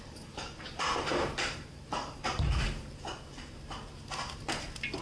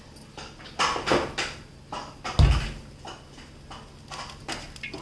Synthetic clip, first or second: first